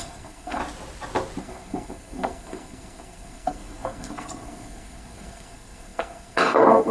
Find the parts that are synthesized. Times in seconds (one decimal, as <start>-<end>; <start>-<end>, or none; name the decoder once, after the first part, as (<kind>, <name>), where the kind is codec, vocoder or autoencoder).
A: 0.0-0.6 (codec, SNAC); 1.4-6.9